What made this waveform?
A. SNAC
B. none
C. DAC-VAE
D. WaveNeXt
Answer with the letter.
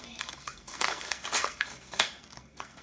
A